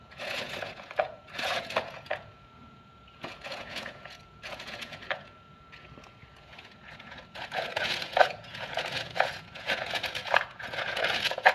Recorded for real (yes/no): no